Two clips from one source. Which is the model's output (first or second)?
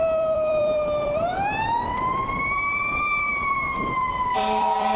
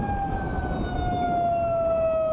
first